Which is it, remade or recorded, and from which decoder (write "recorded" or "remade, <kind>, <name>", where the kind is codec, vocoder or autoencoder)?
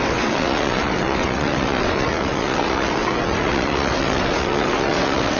remade, vocoder, WaveNeXt